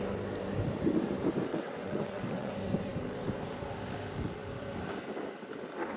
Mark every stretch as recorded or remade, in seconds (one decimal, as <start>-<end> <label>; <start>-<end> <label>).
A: 0.0-1.5 recorded; 1.5-2.5 remade; 2.5-6.0 recorded